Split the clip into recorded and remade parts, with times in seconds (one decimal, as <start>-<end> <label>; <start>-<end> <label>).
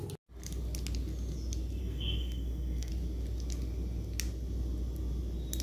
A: 0.0-1.8 recorded; 1.8-2.9 remade; 2.9-5.6 recorded